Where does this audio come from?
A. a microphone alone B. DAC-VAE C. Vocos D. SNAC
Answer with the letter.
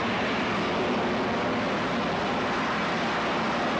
A